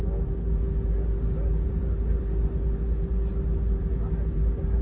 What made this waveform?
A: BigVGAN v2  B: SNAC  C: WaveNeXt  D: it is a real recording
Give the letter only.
D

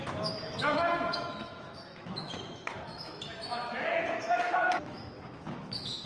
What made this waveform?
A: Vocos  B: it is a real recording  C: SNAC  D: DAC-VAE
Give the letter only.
D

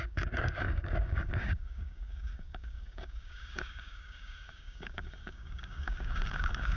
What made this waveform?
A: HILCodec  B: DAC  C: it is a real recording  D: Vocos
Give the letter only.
B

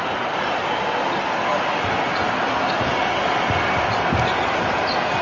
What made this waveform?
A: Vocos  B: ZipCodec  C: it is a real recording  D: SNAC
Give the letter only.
C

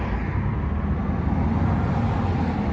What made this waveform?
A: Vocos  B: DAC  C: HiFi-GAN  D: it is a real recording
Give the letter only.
D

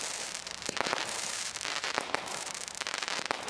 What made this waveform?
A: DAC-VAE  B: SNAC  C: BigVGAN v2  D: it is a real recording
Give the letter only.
C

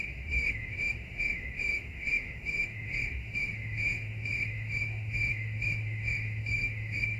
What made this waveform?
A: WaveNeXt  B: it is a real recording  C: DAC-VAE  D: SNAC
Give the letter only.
C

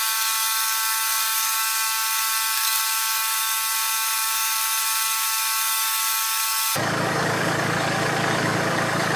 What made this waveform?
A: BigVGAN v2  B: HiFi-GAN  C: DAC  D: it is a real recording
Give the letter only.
C